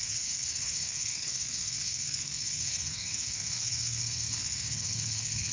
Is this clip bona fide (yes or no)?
no